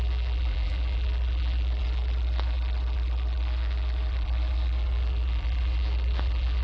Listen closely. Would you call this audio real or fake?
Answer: fake